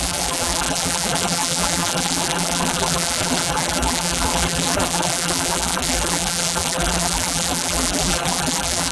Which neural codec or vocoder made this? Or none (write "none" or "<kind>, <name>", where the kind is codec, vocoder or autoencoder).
vocoder, BigVGAN v2